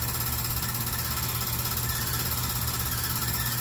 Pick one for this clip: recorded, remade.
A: recorded